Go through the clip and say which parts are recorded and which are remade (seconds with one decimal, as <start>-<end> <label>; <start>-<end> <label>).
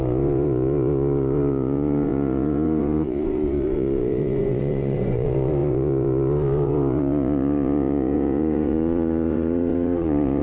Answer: 0.0-10.4 remade